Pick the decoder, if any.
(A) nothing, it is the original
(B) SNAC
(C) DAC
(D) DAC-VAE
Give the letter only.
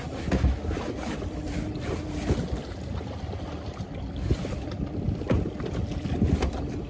A